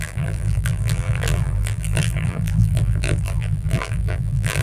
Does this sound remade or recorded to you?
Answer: remade